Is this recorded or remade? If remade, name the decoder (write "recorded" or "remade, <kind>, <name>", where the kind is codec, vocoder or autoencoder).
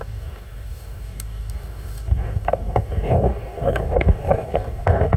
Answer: remade, codec, DAC